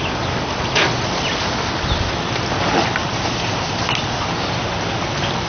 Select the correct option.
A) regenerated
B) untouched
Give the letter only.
B